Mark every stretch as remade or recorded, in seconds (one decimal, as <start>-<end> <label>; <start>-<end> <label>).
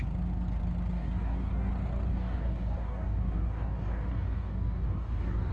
0.0-0.9 recorded; 0.9-1.7 remade; 1.7-2.1 recorded; 2.1-5.5 remade